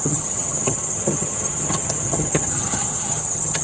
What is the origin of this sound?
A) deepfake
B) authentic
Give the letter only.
A